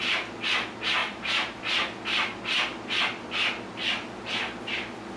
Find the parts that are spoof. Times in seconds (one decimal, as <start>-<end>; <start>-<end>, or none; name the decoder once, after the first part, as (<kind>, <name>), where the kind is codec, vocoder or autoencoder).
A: 1.0-1.6 (vocoder, BigVGAN v2)